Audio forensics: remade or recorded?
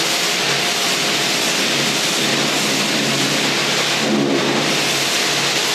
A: recorded